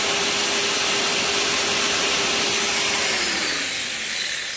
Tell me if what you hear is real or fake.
real